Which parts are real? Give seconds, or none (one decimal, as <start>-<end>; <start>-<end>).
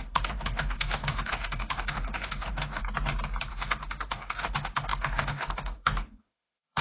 2.8-3.5